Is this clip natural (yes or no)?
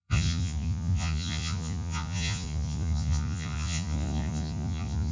no